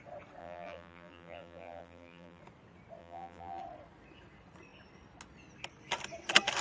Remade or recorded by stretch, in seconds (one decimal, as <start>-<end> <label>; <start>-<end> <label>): 0.0-0.4 recorded; 0.4-2.4 remade; 2.4-3.0 recorded; 3.0-3.6 remade; 3.6-6.6 recorded